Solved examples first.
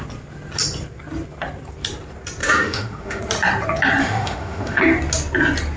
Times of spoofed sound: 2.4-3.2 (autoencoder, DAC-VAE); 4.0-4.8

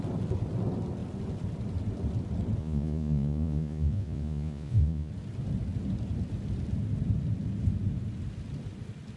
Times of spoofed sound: 2.6-5.1 (vocoder, Vocos)

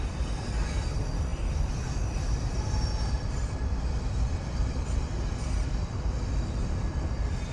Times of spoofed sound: 0.0-1.3 (vocoder, BigVGAN v2); 2.5-7.5

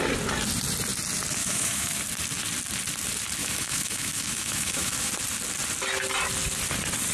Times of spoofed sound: 1.4-2.0 (autoencoder, DAC-VAE); 3.4-5.1

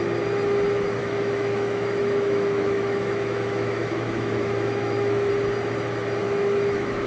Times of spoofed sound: 1.0-5.3 (autoencoder, DAC-VAE); 6.2-7.1

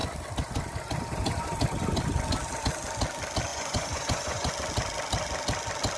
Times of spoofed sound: 3.5-4.5 (vocoder, Vocos)

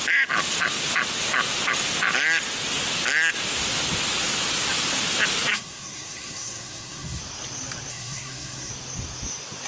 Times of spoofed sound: 5.5-7.2 (codec, SNAC); 7.9-8.7